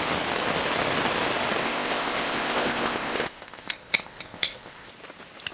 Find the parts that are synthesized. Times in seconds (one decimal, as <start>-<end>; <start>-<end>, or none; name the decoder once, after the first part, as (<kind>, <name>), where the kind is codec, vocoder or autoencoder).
1.6-4.9 (codec, ZipCodec)